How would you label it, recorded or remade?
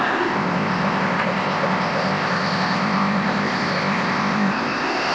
remade